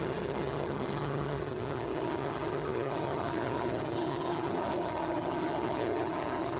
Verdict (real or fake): fake